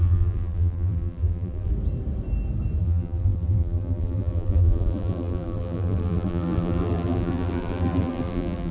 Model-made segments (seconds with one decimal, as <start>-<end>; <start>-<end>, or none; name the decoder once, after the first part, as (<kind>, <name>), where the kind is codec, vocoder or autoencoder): 0.0-1.7 (vocoder, BigVGAN v2); 2.8-8.7